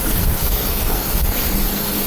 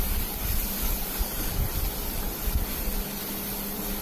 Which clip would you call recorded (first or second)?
second